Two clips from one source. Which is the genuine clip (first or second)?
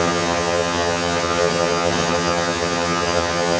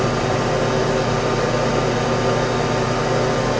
second